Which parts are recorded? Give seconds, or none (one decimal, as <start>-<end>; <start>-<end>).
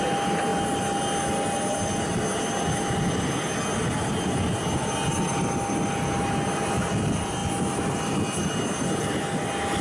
0.0-9.8